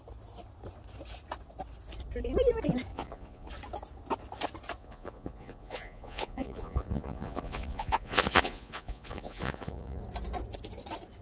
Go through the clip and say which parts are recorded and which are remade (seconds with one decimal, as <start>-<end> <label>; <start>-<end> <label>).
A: 0.0-2.9 recorded; 2.9-3.5 remade; 3.5-4.8 recorded; 4.8-10.0 remade; 10.0-11.2 recorded